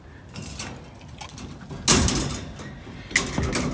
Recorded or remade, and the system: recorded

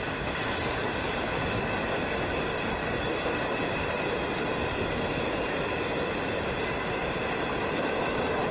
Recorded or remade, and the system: recorded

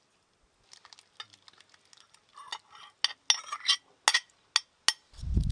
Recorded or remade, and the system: recorded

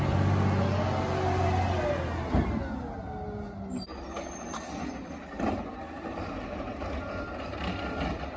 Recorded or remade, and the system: recorded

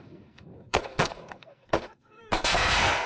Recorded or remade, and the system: remade, codec, SNAC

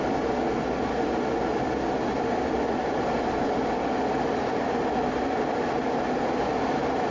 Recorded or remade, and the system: recorded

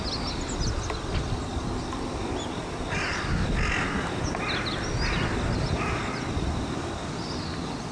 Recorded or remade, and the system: recorded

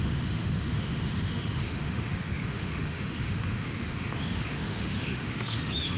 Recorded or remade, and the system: remade, autoencoder, DAC-VAE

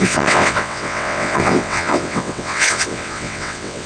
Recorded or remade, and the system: remade, vocoder, WaveNeXt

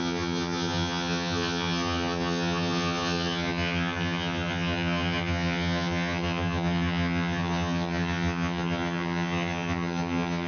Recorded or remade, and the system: remade, vocoder, HiFi-GAN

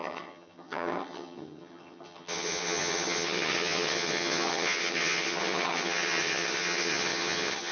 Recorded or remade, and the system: remade, vocoder, HiFi-GAN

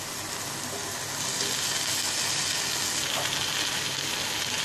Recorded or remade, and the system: recorded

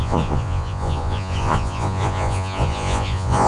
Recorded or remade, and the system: remade, vocoder, Vocos